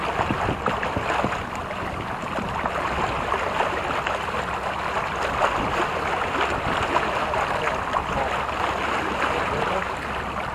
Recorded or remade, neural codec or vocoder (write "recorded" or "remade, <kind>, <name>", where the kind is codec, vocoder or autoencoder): recorded